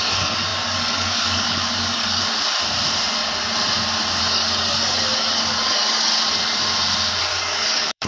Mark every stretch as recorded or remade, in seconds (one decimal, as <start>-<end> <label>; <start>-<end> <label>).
0.0-2.2 remade; 2.2-4.2 recorded; 4.2-6.1 remade; 6.1-7.2 recorded; 7.2-8.1 remade